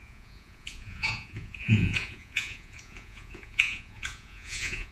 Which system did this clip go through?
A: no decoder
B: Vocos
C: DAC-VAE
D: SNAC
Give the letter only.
B